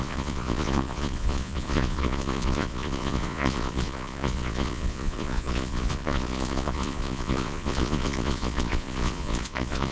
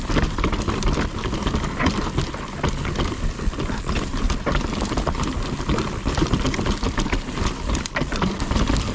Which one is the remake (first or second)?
first